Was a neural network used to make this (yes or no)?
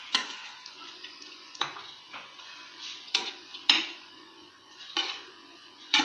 yes